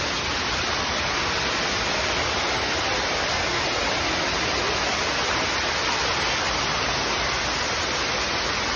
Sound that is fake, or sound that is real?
real